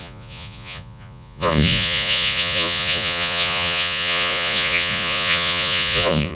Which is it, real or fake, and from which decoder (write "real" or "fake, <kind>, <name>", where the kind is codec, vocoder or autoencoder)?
fake, vocoder, Vocos